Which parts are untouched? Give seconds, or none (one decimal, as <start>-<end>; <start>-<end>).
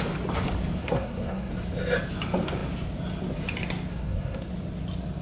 0.0-0.8; 1.5-3.9; 4.5-5.2